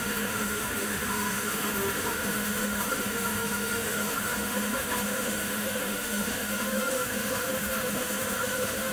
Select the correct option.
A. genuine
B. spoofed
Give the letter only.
B